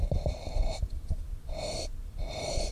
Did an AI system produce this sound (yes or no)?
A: no